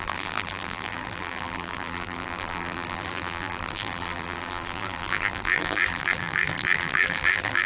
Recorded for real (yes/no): no